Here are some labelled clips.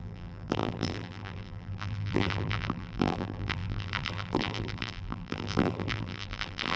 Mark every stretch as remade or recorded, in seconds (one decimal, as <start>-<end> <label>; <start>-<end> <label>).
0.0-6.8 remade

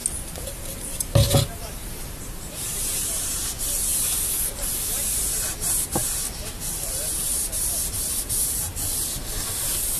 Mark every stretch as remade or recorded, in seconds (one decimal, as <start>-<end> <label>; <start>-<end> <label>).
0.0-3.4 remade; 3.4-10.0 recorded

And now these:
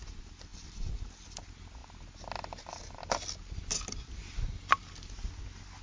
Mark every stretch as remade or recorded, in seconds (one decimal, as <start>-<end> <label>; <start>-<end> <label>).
0.0-0.5 recorded; 0.5-1.4 remade; 1.4-5.8 recorded